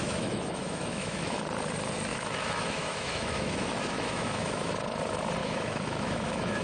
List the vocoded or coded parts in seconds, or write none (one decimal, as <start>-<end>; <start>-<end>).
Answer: 0.0-1.4; 2.1-4.7; 5.4-6.6